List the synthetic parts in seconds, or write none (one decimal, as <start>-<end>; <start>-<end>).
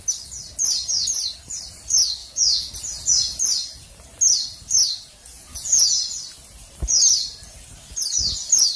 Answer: 2.2-2.7; 5.3-6.0